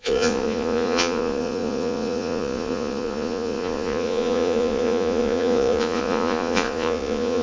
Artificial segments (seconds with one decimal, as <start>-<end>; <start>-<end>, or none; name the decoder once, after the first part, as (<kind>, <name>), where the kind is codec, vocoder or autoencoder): 0.0-7.4 (vocoder, Vocos)